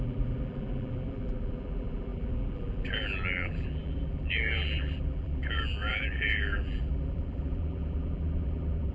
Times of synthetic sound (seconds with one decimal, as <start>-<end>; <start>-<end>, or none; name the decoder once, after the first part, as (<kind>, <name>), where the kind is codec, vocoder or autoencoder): 0.0-8.9 (vocoder, BigVGAN v2)